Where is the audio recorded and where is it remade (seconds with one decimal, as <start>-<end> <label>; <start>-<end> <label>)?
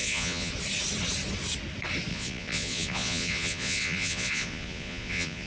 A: 0.0-0.5 remade; 0.5-2.1 recorded; 2.1-5.5 remade